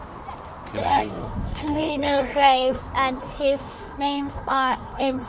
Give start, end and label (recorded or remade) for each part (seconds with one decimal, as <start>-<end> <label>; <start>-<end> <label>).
0.0-0.8 recorded; 0.8-2.8 remade; 2.8-3.2 recorded; 3.2-5.3 remade